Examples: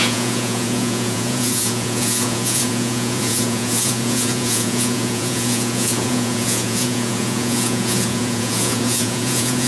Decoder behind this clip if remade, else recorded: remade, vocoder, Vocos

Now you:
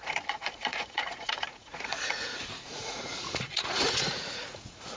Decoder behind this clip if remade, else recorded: remade, vocoder, Vocos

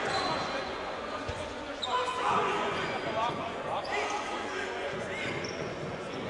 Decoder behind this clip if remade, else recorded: remade, vocoder, Vocos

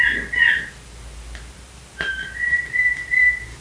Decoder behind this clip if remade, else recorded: recorded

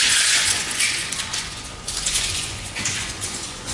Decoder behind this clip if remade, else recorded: remade, vocoder, Vocos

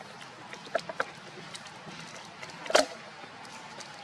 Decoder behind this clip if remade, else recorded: recorded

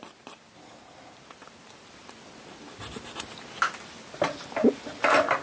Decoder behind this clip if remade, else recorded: recorded